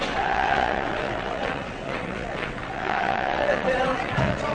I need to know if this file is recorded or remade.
remade